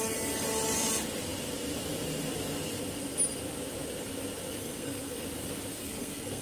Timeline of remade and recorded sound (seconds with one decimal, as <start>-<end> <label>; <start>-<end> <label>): 0.0-4.6 recorded; 4.6-5.2 remade; 5.2-5.7 recorded; 5.7-6.4 remade